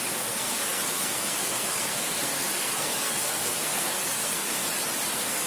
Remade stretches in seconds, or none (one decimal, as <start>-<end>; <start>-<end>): 0.0-4.6; 5.1-5.5